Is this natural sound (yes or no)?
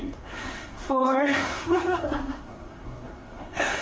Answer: no